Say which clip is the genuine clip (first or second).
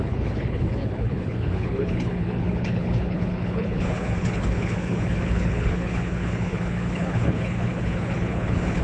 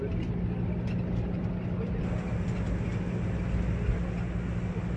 second